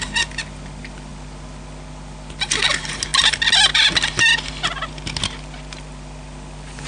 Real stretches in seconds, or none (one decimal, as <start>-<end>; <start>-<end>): 0.0-6.9